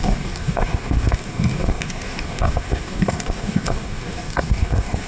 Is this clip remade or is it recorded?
remade